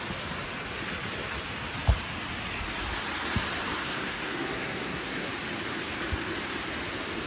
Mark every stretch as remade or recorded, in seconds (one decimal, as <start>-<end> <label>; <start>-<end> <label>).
0.0-3.8 recorded; 3.8-5.3 remade; 5.3-7.3 recorded